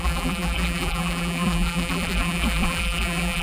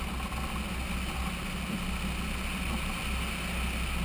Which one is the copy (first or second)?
first